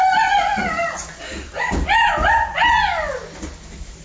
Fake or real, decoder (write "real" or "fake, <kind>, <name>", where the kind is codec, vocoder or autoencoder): real